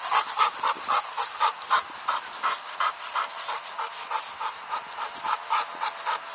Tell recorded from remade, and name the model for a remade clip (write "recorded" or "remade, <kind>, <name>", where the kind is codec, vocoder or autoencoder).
recorded